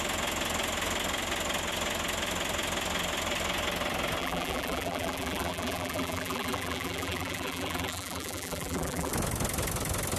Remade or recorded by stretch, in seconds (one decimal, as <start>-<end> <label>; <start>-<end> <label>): 0.0-4.2 recorded; 4.2-9.1 remade; 9.1-10.2 recorded